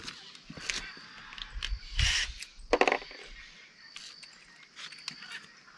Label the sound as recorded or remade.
recorded